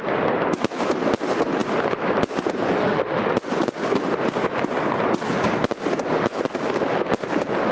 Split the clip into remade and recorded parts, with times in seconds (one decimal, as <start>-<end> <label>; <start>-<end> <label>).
0.0-2.8 recorded; 2.8-3.3 remade; 3.3-7.7 recorded